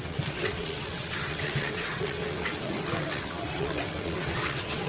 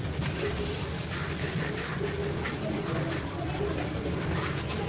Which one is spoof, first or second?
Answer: first